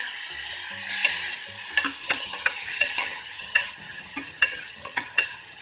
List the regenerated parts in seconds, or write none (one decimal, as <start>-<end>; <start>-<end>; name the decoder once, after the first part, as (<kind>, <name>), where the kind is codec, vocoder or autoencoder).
2.0-5.6 (vocoder, HiFi-GAN)